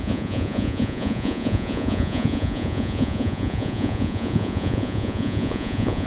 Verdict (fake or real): fake